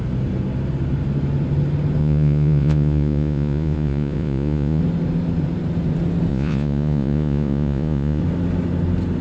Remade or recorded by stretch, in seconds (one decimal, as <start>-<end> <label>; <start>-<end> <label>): 0.0-2.0 recorded; 2.0-4.8 remade; 4.8-6.3 recorded; 6.3-8.2 remade; 8.2-9.2 recorded